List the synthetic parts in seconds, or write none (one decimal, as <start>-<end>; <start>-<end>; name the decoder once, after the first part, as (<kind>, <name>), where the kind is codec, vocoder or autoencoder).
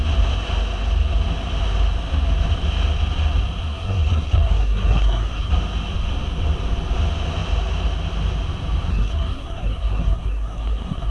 3.6-5.5 (codec, SNAC); 8.9-11.1